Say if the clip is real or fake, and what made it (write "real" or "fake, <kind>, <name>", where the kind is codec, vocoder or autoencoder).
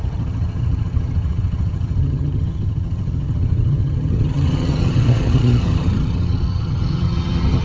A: fake, vocoder, HiFi-GAN